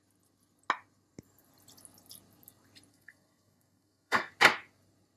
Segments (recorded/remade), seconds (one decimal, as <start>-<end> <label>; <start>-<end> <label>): 0.0-2.9 recorded; 2.9-4.3 remade; 4.3-5.2 recorded

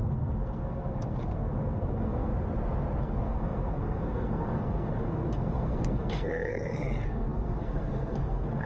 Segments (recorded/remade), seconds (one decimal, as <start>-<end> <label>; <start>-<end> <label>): 0.0-2.3 remade; 2.3-3.0 recorded; 3.0-8.7 remade

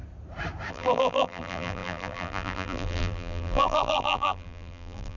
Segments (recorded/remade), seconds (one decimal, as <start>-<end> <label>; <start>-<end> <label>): 0.0-0.7 recorded; 0.7-5.2 remade

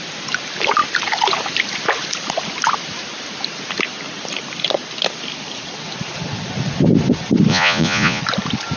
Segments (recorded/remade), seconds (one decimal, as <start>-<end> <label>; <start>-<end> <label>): 0.0-7.5 recorded; 7.5-8.2 remade; 8.2-8.8 recorded

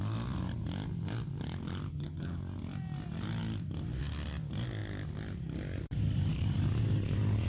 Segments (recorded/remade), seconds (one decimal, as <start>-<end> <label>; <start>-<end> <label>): 0.0-1.9 recorded; 1.9-2.4 remade; 2.4-7.5 recorded

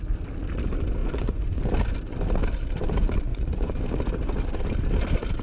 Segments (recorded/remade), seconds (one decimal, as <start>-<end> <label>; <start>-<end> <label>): 0.0-1.0 recorded; 1.0-1.6 remade; 1.6-3.3 recorded; 3.3-3.8 remade; 3.8-5.4 recorded

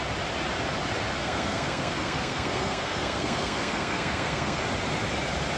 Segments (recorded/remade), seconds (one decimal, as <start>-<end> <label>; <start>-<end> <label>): 0.0-1.2 recorded; 1.2-4.6 remade; 4.6-5.6 recorded

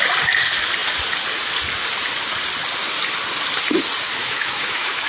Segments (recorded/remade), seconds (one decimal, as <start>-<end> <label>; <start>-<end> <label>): 0.0-4.2 recorded; 4.2-5.1 remade